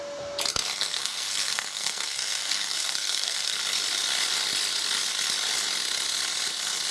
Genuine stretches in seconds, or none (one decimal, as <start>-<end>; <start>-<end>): 0.0-0.5; 3.6-6.9

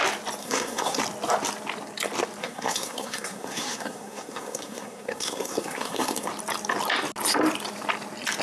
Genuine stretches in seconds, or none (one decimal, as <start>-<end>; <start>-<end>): 0.0-0.4; 1.0-2.4; 6.3-8.4

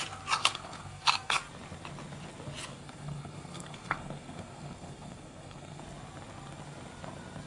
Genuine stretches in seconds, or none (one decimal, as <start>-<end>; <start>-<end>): 0.0-0.4; 1.4-2.7; 5.8-7.5

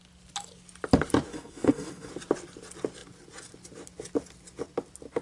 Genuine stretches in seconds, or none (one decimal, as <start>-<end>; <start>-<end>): 0.0-1.3; 2.1-5.2